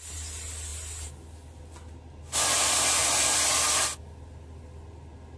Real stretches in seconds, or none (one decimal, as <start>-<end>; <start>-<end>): 0.0-5.4